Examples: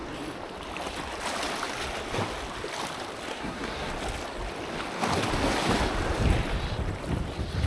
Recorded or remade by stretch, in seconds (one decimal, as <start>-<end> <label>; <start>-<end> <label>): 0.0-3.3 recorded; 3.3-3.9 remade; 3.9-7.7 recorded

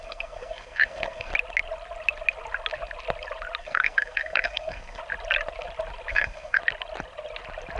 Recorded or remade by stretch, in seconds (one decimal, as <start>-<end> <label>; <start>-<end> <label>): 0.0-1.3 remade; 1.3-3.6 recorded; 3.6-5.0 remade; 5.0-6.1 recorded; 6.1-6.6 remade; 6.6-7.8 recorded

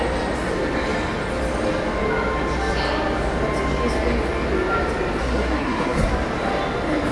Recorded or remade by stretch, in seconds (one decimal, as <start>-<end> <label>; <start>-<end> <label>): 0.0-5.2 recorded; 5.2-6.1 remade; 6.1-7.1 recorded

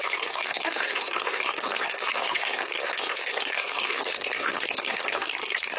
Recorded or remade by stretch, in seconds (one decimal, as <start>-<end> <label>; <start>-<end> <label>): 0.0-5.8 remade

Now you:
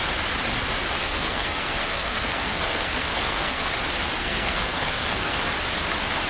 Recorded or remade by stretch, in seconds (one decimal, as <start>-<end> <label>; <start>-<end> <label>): 0.0-1.0 recorded; 1.0-3.7 remade; 3.7-4.2 recorded; 4.2-5.4 remade; 5.4-6.3 recorded